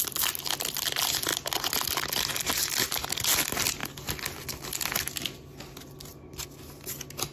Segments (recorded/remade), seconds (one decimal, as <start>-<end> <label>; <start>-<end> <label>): 0.0-7.3 recorded